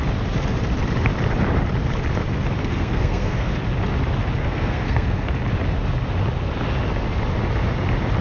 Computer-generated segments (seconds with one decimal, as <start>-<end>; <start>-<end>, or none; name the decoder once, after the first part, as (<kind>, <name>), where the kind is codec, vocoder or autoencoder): 2.6-3.5 (codec, SNAC); 4.4-5.3